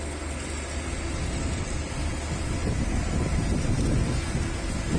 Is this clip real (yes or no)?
yes